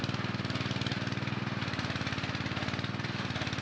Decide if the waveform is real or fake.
real